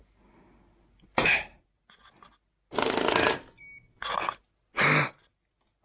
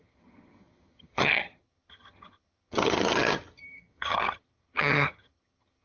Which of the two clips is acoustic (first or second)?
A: first